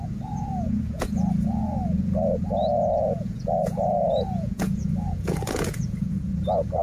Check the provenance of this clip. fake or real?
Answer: fake